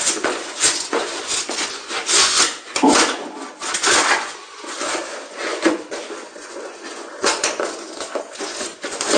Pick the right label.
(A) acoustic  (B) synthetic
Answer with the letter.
B